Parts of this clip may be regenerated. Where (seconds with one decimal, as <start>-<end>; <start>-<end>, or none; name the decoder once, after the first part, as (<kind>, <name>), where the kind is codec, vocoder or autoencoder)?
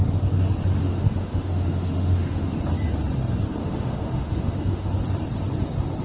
0.8-2.6 (autoencoder, DAC-VAE); 3.6-4.9